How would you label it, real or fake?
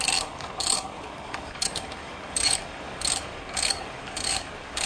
fake